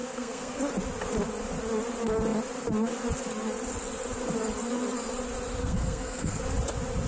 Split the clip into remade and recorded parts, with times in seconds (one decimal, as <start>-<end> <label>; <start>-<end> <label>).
0.0-0.6 remade; 0.6-5.6 recorded; 5.6-6.4 remade; 6.4-7.1 recorded